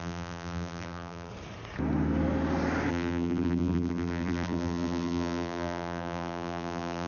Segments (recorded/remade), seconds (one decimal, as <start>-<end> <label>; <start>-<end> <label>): 0.0-1.3 remade; 1.3-2.9 recorded; 2.9-7.1 remade